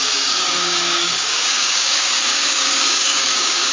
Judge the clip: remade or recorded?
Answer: remade